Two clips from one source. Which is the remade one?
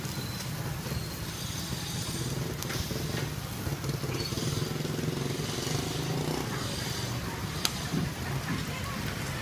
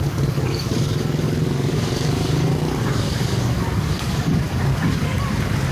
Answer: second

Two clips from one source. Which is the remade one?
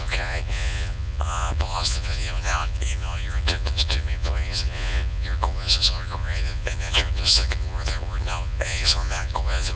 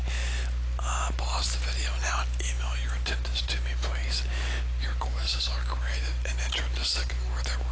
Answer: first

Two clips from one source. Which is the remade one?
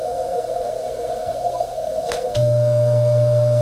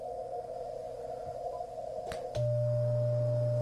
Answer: first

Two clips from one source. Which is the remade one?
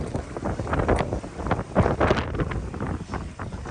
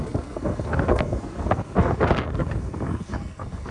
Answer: second